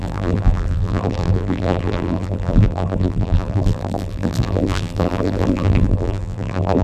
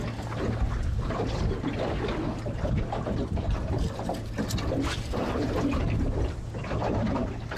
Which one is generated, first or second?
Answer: first